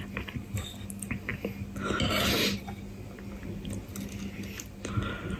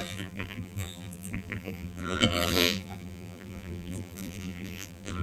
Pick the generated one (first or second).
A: second